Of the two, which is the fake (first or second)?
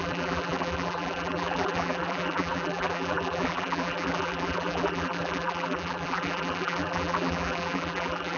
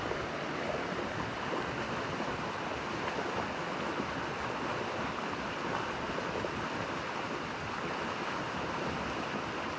first